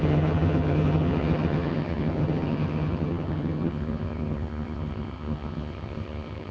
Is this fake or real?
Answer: fake